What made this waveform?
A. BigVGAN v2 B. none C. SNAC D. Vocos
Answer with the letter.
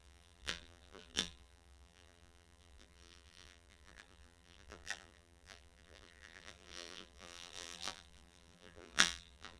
A